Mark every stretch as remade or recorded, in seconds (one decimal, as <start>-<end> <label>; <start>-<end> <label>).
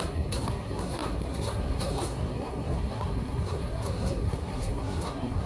0.0-5.5 remade